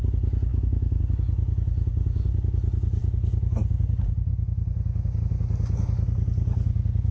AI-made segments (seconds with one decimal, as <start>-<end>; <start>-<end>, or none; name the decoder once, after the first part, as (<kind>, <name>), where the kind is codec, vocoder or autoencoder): 0.5-1.0 (autoencoder, DAC-VAE)